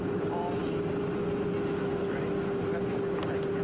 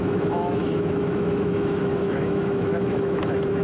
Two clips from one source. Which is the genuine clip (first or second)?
first